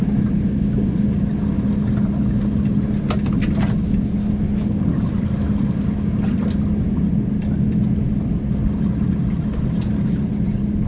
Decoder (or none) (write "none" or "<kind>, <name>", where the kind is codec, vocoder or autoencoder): none